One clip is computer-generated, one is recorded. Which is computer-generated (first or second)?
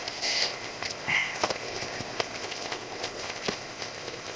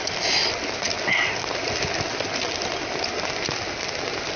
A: first